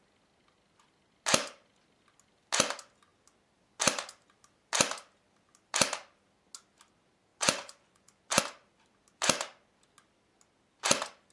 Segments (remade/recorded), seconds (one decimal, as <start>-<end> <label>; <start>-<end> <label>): 0.0-7.3 recorded; 7.3-8.4 remade; 8.4-11.3 recorded